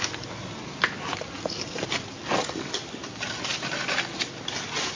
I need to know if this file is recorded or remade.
recorded